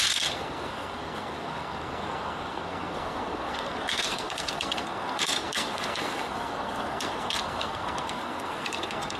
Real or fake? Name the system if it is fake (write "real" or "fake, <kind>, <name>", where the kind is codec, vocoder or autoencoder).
fake, codec, SNAC